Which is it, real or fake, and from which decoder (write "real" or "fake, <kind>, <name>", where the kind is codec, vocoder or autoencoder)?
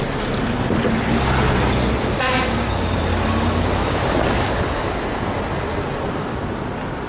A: real